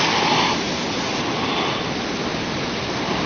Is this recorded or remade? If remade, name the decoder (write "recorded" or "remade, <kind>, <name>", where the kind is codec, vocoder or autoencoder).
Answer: recorded